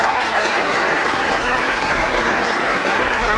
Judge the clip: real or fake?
fake